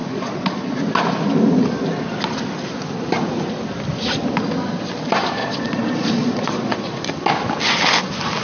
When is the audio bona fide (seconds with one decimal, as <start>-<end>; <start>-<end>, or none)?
0.8-5.4; 7.1-8.4